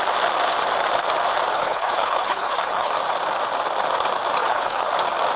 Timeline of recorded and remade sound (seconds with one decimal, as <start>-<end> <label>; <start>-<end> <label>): 0.0-1.5 recorded; 1.5-2.9 remade; 2.9-4.4 recorded; 4.4-4.9 remade; 4.9-5.4 recorded